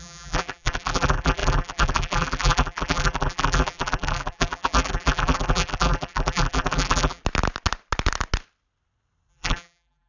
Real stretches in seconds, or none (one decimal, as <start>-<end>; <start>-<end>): 7.2-9.3